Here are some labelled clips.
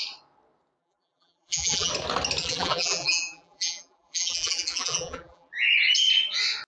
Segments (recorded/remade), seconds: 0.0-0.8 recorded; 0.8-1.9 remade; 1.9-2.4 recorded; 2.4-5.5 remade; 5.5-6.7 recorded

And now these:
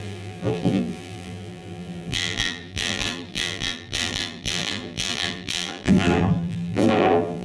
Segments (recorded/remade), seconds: 0.0-7.4 remade